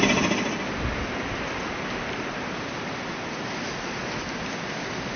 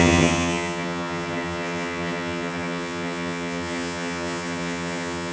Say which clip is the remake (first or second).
second